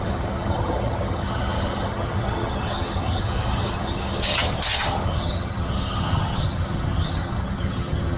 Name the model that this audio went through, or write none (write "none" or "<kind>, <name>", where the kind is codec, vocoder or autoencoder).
vocoder, HiFi-GAN